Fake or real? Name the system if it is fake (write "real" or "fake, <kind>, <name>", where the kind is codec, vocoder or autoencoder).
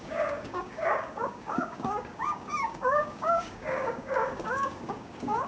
fake, codec, DAC